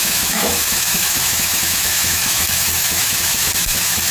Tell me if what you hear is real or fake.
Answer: fake